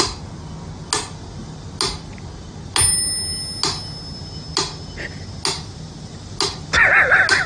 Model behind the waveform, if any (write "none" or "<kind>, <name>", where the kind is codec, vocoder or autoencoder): none